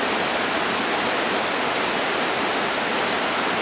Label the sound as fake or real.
real